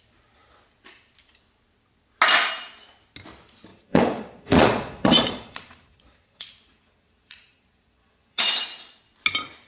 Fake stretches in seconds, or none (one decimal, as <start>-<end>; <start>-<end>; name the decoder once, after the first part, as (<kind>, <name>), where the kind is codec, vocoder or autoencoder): 3.7-8.5 (vocoder, Vocos)